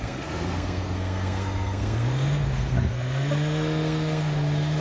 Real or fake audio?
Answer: fake